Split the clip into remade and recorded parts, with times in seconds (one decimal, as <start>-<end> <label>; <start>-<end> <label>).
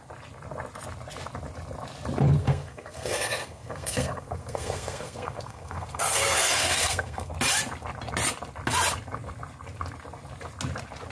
0.0-2.4 recorded; 2.4-7.3 remade; 7.3-11.1 recorded